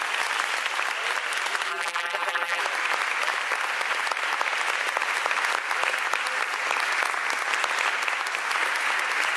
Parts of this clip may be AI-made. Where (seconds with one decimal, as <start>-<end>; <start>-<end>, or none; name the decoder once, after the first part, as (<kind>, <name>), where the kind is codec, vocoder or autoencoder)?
1.7-2.6 (vocoder, BigVGAN v2)